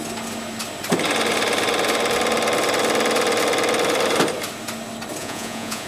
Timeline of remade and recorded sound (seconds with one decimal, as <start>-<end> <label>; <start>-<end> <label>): 0.0-5.2 recorded; 5.2-5.9 remade